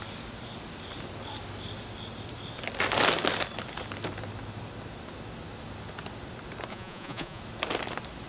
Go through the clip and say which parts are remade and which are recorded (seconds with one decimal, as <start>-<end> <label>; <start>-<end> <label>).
0.0-6.7 recorded; 6.7-7.4 remade; 7.4-8.3 recorded